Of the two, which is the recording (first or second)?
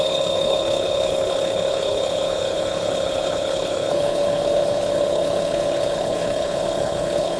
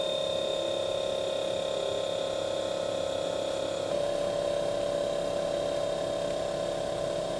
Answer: second